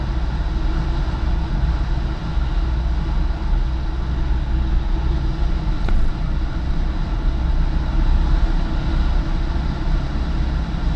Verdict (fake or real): real